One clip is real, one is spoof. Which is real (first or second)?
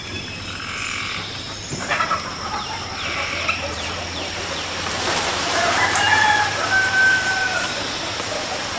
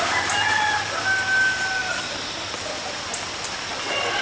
second